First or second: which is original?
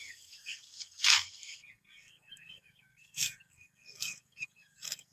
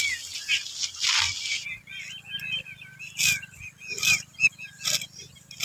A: second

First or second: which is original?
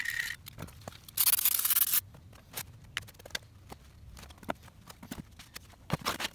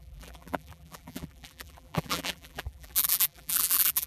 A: first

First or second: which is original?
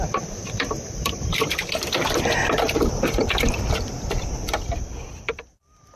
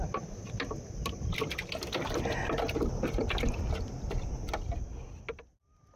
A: second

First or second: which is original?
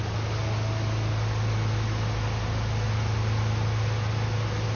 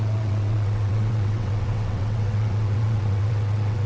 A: first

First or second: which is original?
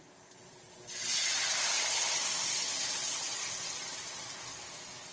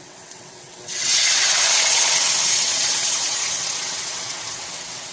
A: first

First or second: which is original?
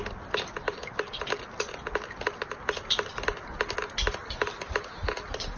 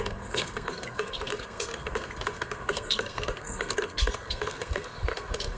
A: first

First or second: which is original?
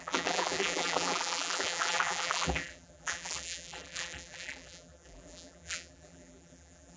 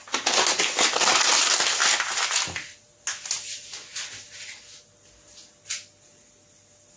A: second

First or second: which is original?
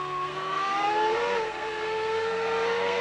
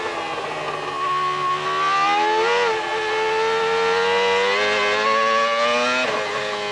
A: second